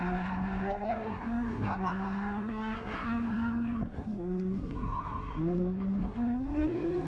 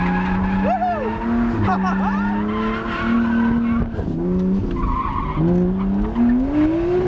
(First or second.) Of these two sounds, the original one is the second